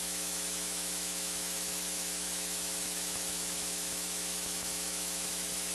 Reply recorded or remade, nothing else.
remade